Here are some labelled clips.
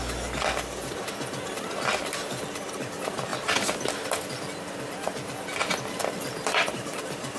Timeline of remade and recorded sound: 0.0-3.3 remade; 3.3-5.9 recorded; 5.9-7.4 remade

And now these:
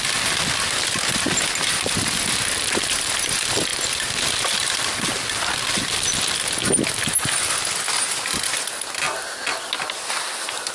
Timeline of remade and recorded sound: 0.0-10.7 recorded

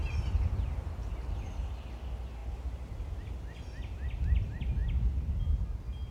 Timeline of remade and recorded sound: 0.0-1.1 remade; 1.1-4.8 recorded; 4.8-5.3 remade; 5.3-6.1 recorded